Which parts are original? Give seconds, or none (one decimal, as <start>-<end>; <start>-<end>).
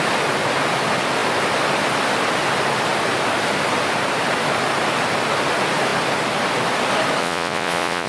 0.0-7.2